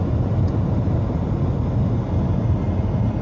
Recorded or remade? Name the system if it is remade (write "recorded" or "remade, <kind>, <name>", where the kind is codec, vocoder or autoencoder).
recorded